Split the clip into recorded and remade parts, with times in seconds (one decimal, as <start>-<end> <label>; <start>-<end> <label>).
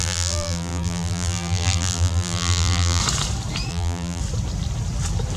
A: 0.0-3.0 remade; 3.0-3.7 recorded; 3.7-4.2 remade; 4.2-5.4 recorded